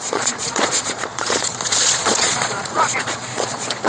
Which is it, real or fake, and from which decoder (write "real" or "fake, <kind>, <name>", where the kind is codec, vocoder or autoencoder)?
fake, vocoder, Vocos